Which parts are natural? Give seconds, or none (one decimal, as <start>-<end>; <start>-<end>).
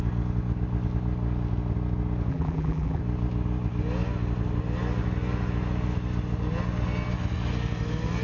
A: 0.0-2.3; 3.0-8.2